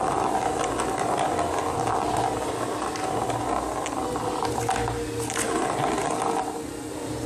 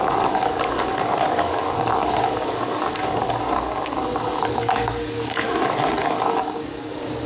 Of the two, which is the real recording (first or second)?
first